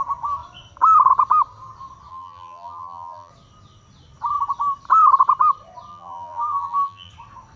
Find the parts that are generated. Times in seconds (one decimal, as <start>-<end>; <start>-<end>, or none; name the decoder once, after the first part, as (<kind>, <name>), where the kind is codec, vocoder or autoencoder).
2.1-3.3 (vocoder, BigVGAN v2); 5.9-7.1